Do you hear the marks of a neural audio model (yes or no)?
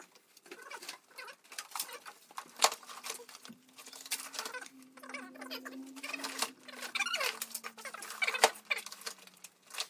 no